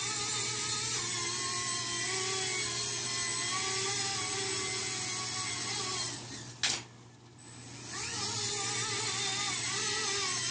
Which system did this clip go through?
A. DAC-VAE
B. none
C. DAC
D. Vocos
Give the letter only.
B